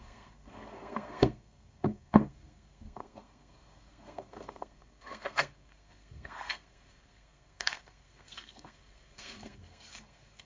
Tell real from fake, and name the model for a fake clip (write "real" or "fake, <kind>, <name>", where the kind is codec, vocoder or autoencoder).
fake, codec, SNAC